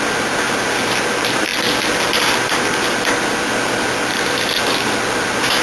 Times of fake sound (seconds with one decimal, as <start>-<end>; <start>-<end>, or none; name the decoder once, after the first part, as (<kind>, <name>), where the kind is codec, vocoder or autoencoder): none